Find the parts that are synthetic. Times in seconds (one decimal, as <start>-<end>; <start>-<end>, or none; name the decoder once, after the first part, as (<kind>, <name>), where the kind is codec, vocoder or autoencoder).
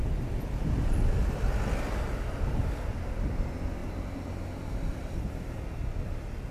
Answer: 3.8-5.1 (vocoder, BigVGAN v2)